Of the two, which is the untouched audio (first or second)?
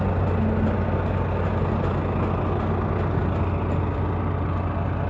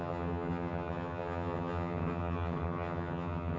first